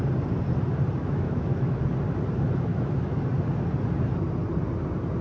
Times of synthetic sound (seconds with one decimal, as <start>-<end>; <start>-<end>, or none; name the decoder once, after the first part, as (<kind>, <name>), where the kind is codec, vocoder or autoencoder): 1.0-1.8 (autoencoder, DAC-VAE); 2.7-3.2